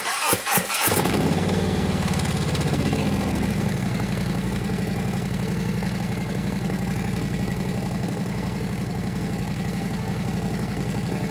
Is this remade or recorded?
remade